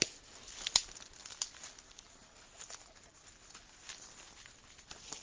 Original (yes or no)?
yes